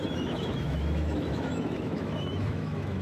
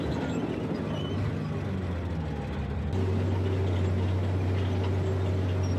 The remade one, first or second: first